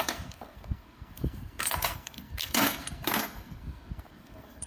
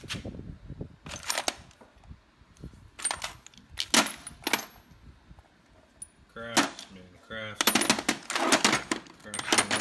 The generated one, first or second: first